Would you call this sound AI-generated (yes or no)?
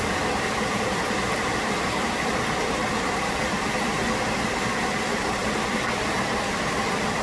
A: yes